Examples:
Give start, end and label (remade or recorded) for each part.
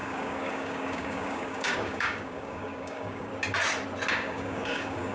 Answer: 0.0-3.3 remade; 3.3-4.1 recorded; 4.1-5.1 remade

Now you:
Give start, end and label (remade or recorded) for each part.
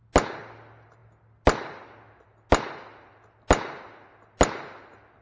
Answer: 0.0-5.2 recorded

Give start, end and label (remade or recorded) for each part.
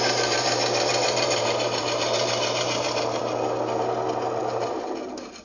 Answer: 0.0-3.2 remade; 3.2-4.4 recorded; 4.4-5.4 remade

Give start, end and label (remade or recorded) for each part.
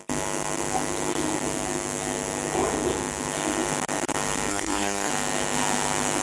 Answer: 0.0-4.5 recorded; 4.5-5.1 remade; 5.1-6.2 recorded